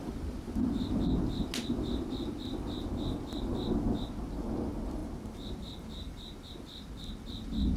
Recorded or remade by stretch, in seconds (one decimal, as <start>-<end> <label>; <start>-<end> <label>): 0.0-5.0 recorded; 5.0-6.5 remade; 6.5-7.8 recorded